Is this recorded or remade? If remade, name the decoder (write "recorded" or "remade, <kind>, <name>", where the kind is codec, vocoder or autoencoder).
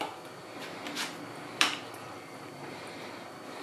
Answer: recorded